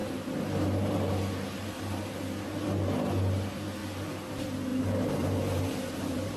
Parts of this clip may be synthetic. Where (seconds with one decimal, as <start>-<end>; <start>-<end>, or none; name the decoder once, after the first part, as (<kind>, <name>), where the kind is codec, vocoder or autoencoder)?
4.7-6.4 (vocoder, BigVGAN v2)